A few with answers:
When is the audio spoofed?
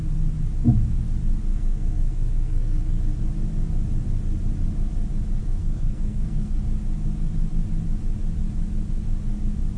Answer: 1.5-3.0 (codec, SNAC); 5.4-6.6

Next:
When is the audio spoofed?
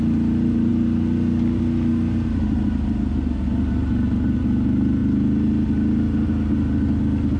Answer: none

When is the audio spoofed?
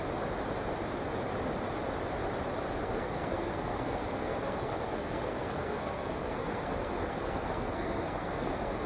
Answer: 2.8-8.9 (codec, SNAC)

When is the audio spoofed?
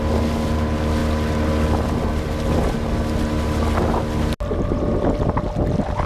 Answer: none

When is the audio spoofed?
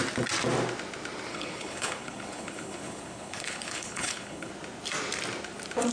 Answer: 1.3-4.5 (codec, HILCodec)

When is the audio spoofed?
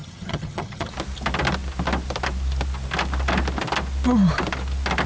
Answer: 0.0-0.9 (vocoder, HiFi-GAN)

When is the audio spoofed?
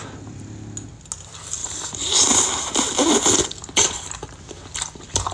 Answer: none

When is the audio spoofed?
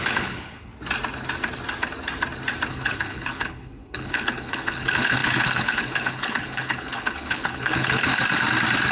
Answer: 0.0-0.7 (codec, HILCodec); 2.7-8.1